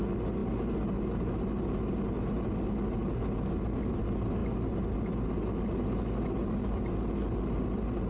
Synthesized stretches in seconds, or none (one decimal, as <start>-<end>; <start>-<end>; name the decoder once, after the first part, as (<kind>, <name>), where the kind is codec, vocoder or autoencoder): none